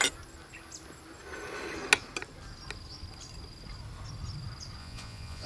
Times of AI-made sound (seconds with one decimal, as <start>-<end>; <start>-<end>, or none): 4.8-5.5